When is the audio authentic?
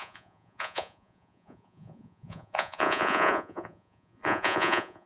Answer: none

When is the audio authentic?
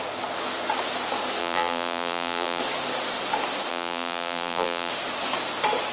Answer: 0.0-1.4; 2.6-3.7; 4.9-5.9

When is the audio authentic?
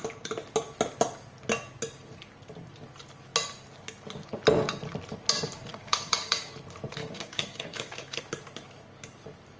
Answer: 0.0-5.7; 6.5-7.0; 8.2-9.6